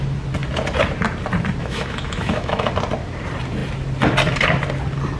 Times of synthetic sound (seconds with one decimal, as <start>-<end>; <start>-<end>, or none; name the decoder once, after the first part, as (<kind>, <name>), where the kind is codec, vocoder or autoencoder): 1.6-2.7 (autoencoder, DAC-VAE)